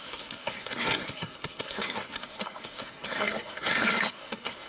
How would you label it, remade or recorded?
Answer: remade